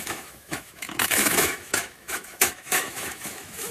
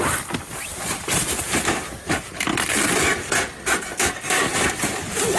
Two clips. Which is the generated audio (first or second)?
first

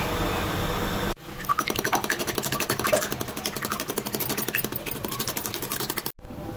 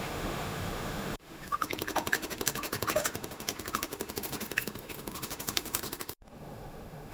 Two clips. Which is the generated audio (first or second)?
second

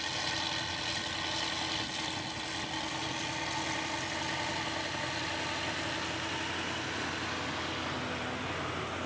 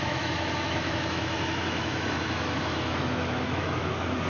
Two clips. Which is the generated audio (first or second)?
second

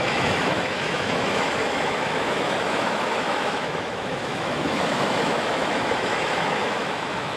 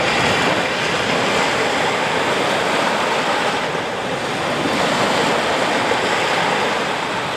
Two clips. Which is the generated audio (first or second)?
first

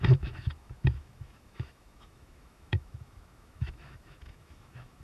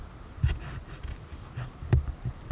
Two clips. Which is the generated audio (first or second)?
first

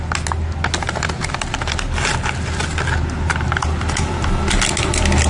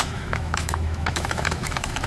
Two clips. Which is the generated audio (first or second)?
second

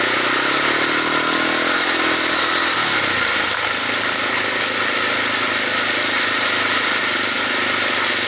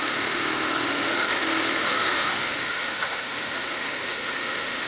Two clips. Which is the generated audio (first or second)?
second